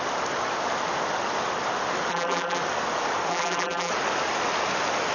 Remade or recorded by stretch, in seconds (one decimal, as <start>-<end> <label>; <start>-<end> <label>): 0.0-2.1 recorded; 2.1-2.6 remade; 2.6-3.3 recorded; 3.3-3.9 remade; 3.9-5.1 recorded